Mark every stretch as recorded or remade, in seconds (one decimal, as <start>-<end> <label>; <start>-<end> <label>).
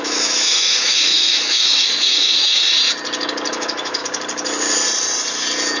0.0-2.7 remade; 2.7-3.5 recorded; 3.5-4.0 remade; 4.0-5.8 recorded